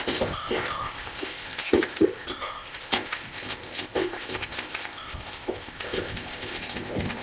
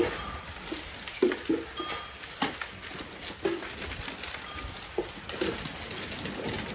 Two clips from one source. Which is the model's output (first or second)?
first